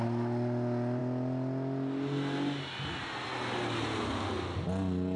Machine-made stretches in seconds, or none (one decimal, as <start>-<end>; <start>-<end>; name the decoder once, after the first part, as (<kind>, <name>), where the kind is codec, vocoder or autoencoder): none